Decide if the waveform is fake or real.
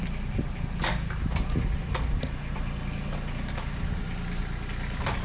real